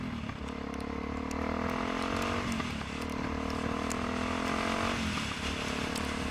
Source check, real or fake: real